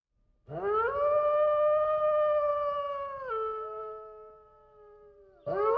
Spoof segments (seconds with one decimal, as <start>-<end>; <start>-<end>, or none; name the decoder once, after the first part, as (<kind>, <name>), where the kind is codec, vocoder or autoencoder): none